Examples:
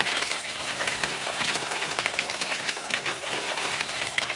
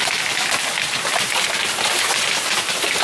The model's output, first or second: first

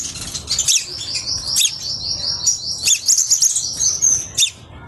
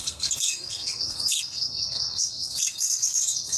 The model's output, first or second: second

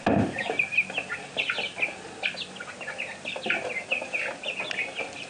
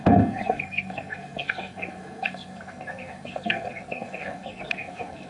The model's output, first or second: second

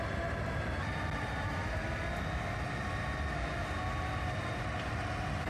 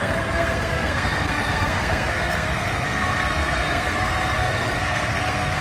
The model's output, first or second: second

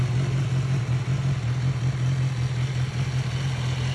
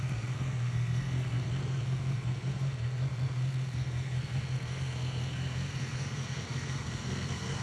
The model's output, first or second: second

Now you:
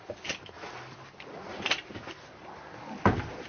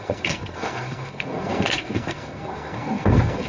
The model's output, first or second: second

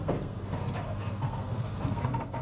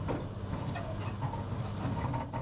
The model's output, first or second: first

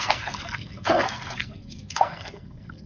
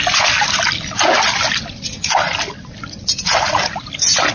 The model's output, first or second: first